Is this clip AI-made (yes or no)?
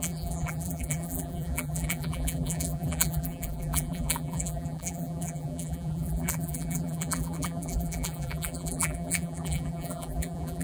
yes